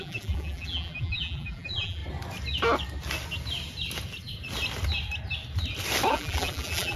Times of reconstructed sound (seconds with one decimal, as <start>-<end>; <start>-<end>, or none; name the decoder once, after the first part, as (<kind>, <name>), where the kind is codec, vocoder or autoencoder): 0.0-2.0 (vocoder, BigVGAN v2); 6.1-7.0